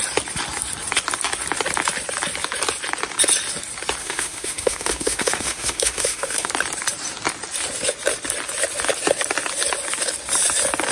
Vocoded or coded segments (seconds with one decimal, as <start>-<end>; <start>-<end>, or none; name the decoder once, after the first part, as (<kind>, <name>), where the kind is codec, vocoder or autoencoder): 4.0-6.5 (autoencoder, DAC-VAE)